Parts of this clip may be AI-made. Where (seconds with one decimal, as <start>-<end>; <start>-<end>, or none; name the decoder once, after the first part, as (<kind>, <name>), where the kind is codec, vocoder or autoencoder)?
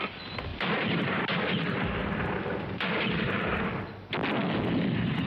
0.5-3.7 (vocoder, BigVGAN v2)